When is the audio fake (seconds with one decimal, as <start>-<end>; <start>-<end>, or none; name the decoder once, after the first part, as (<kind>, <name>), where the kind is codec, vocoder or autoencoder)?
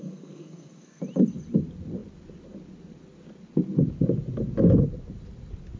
0.0-1.0 (codec, SNAC)